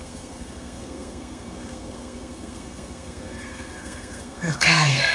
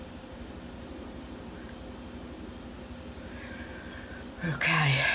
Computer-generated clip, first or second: first